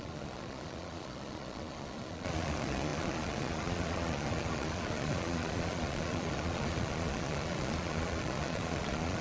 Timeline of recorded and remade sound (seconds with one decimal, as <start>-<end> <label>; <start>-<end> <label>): 0.0-9.2 remade